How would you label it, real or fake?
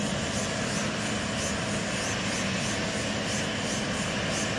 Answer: real